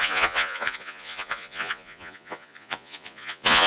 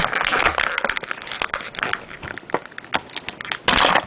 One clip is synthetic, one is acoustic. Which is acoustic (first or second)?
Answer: second